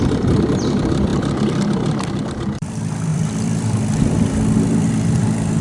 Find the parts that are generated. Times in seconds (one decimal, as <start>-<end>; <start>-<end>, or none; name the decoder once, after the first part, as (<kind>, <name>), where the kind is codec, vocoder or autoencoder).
0.0-5.6 (vocoder, BigVGAN v2)